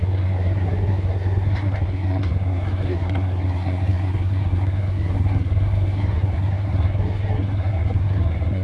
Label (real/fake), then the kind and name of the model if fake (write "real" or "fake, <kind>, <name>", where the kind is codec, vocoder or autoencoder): fake, codec, SNAC